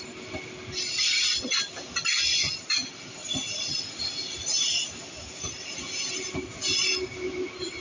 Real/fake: real